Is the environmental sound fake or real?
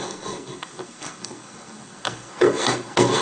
fake